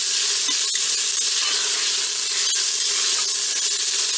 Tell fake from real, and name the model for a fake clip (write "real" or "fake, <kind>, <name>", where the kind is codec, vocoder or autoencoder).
real